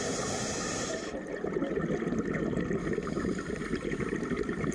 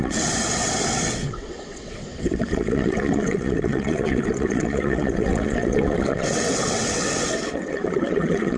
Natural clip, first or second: first